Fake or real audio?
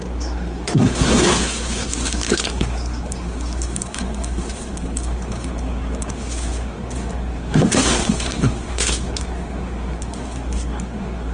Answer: fake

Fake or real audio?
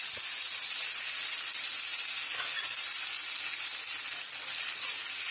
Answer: real